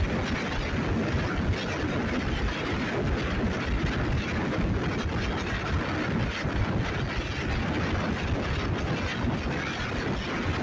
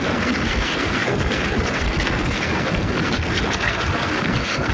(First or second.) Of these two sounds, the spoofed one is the second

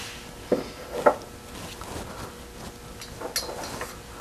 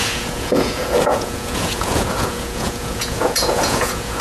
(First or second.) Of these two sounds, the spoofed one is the second